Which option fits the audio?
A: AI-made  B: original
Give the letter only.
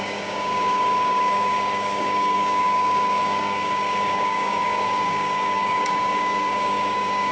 A